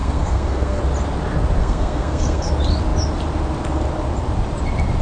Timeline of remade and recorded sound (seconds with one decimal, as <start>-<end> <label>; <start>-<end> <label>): 0.0-0.8 remade; 0.8-1.6 recorded; 1.6-2.5 remade; 2.5-5.0 recorded